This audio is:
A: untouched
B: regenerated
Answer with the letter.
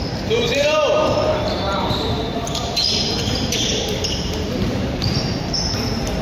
B